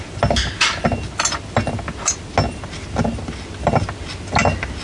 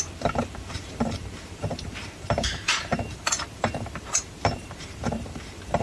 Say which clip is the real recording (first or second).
first